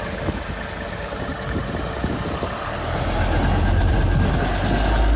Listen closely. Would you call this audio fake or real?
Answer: real